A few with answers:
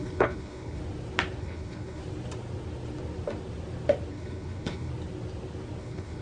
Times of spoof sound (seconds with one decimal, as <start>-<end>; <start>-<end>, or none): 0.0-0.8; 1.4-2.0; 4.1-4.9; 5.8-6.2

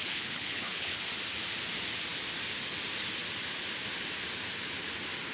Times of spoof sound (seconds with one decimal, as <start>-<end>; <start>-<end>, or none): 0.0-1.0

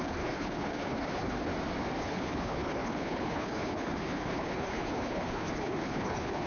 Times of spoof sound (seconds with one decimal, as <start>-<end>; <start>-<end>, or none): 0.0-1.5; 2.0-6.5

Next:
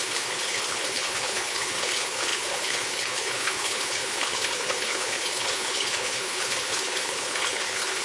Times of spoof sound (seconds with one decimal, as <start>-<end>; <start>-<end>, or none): 0.0-8.0

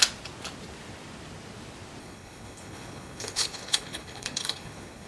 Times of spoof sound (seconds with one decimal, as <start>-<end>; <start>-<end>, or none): 2.0-5.1